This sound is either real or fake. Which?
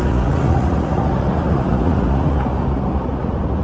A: fake